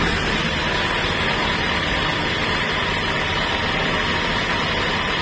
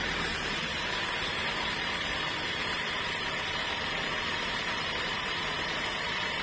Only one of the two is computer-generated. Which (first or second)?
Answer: second